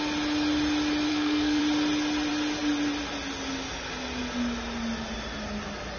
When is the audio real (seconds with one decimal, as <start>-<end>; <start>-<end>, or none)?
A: 0.0-1.1; 1.6-6.0